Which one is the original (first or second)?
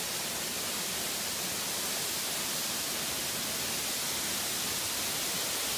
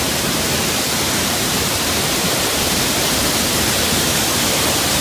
first